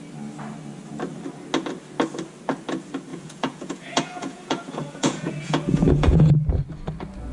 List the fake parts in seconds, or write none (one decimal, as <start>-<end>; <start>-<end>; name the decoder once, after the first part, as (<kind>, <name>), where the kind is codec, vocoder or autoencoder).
3.1-6.3 (vocoder, Vocos)